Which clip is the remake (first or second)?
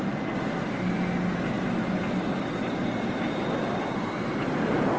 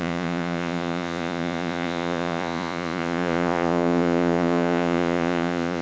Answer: second